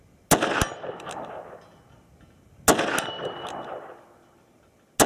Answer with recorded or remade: recorded